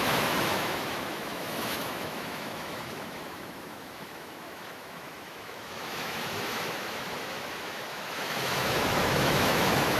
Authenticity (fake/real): fake